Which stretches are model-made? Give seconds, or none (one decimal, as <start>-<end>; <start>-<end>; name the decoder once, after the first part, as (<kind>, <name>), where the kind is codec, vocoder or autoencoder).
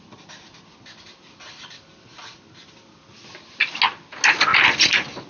none